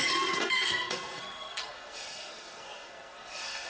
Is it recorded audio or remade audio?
remade